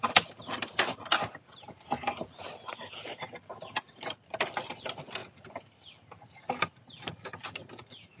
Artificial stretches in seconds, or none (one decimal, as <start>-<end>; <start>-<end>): none